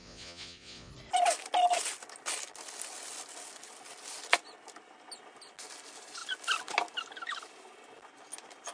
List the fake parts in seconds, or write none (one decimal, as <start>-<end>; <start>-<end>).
0.0-0.9